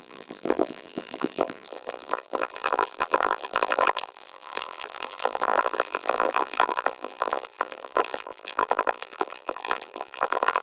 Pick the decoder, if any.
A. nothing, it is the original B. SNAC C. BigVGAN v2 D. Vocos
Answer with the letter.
C